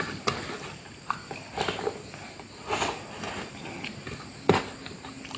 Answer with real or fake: real